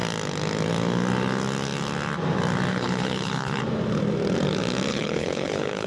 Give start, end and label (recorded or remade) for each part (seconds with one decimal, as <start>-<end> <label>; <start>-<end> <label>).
0.0-2.7 recorded; 2.7-3.6 remade; 3.6-4.9 recorded; 4.9-5.9 remade